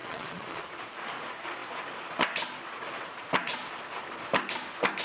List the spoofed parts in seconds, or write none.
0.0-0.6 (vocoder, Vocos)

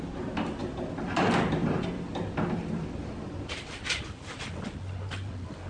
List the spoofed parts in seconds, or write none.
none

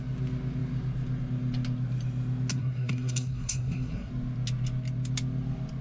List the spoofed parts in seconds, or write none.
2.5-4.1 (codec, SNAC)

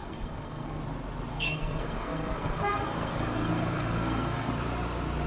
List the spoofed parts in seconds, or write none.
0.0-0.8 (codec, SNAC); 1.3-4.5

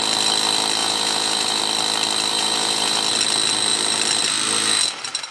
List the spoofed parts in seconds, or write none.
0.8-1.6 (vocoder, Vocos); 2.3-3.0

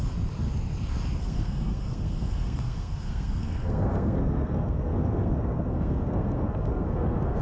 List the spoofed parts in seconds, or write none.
1.2-7.4 (codec, SNAC)

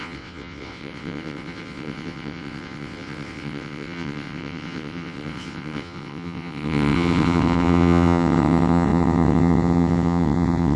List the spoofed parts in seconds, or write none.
0.0-10.8 (vocoder, WaveNeXt)

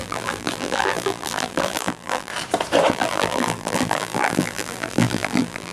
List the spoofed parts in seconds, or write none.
0.0-2.3 (vocoder, BigVGAN v2); 2.9-5.7